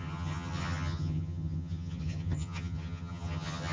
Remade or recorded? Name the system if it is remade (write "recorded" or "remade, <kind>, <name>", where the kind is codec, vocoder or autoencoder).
remade, vocoder, HiFi-GAN